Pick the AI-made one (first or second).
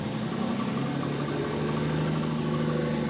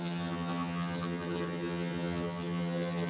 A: second